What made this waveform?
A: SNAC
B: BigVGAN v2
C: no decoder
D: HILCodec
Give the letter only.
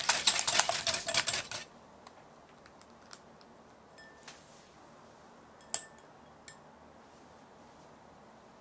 C